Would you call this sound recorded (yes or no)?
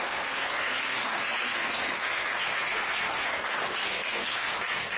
no